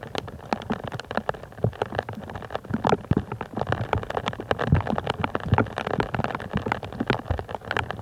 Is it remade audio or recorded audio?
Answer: recorded